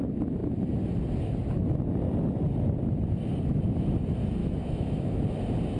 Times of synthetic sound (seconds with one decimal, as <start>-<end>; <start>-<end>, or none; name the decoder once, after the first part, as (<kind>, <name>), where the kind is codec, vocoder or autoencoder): 4.4-5.2 (autoencoder, DAC-VAE)

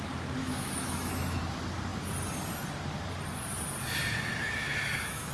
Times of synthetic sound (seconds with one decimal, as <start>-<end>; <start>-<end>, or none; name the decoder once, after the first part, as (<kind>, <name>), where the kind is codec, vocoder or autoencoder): 0.4-1.4 (autoencoder, DAC-VAE); 4.4-5.3